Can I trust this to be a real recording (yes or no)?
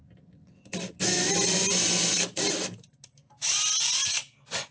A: yes